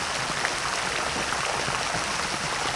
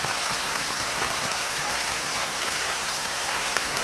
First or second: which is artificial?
second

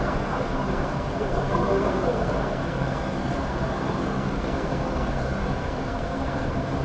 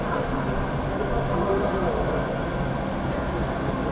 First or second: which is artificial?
first